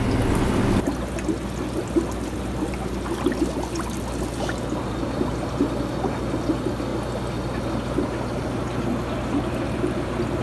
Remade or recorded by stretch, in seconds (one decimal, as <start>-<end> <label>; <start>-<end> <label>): 0.0-10.4 recorded